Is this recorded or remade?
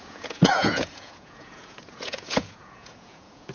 remade